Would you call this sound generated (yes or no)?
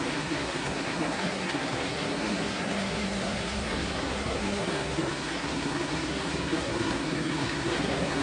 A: yes